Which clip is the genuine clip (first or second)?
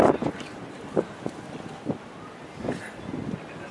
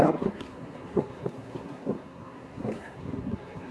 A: first